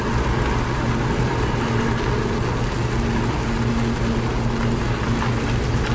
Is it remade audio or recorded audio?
recorded